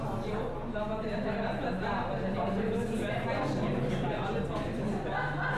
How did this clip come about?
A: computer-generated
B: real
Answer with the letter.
B